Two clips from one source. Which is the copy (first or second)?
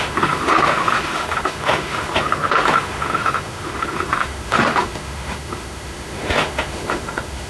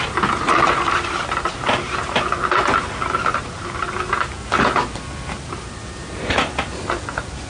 first